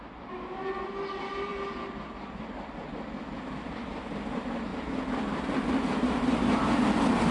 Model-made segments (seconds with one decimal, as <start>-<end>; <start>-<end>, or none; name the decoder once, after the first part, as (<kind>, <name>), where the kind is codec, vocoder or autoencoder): none